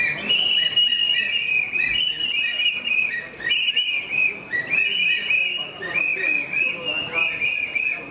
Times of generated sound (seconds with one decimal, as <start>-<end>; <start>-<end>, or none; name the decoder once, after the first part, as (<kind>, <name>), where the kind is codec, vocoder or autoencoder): none